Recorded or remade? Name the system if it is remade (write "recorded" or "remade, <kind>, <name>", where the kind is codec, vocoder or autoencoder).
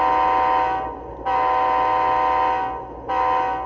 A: recorded